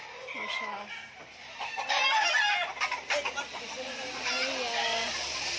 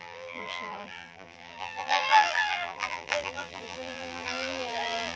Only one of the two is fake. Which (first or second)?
second